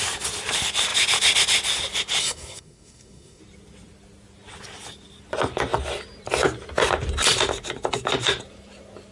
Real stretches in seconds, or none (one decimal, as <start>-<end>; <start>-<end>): 0.0-2.2; 3.4-9.1